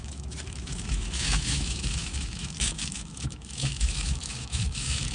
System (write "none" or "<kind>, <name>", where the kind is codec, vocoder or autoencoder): autoencoder, DAC-VAE